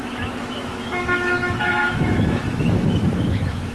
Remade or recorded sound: remade